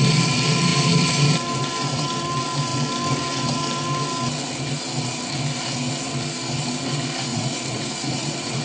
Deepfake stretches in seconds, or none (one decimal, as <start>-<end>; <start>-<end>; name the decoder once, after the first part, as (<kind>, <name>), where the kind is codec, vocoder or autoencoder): 7.3-8.6 (vocoder, Vocos)